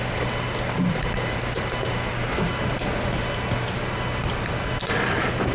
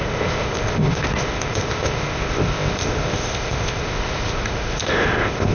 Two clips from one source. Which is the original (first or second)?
first